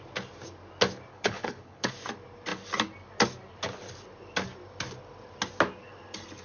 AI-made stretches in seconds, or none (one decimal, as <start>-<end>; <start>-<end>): 1.1-1.9